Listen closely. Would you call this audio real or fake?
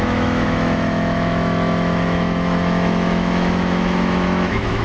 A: fake